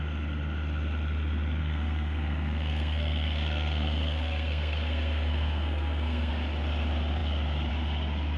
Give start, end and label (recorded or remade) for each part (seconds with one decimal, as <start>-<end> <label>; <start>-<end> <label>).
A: 0.0-1.6 recorded; 1.6-6.3 remade; 6.3-8.4 recorded